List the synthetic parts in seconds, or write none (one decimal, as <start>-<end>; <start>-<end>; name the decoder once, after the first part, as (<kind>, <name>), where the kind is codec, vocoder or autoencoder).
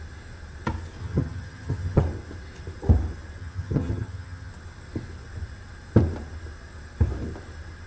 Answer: 1.0-2.0 (vocoder, HiFi-GAN); 3.4-4.5